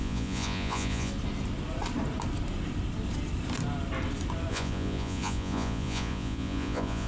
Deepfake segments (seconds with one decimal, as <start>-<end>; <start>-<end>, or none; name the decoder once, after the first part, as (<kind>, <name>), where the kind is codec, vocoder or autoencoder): 0.0-1.1 (vocoder, Vocos); 4.5-7.1